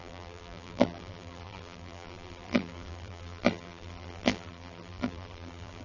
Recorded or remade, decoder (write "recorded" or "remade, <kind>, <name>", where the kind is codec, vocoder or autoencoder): remade, vocoder, BigVGAN v2